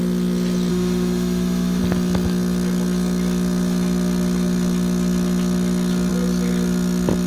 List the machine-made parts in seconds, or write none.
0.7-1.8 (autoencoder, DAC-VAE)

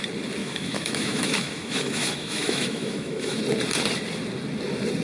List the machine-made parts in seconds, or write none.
0.4-3.4 (autoencoder, DAC-VAE)